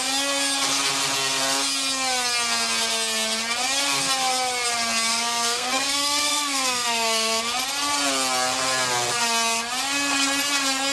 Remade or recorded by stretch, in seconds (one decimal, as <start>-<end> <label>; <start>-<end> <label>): 0.0-5.1 recorded; 5.1-7.4 remade; 7.4-10.9 recorded